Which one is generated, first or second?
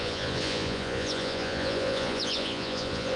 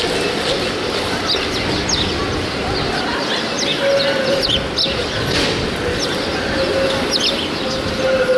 first